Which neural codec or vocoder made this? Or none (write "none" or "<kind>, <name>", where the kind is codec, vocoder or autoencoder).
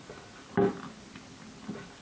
none